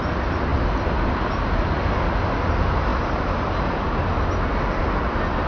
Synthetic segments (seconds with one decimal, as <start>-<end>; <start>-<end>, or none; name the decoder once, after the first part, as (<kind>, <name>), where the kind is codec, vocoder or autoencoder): none